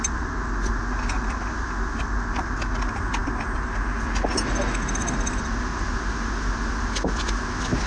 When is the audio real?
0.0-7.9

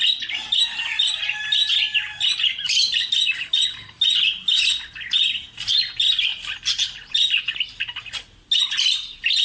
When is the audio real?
0.0-9.4

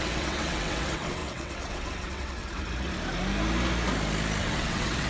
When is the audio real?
2.4-4.4